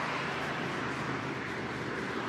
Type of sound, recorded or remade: remade